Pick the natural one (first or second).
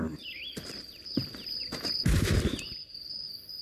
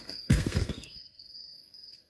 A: first